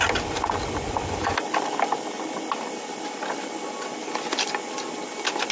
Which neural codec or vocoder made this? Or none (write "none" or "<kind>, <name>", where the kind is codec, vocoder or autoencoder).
none